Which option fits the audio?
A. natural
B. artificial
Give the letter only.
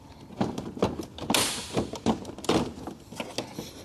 A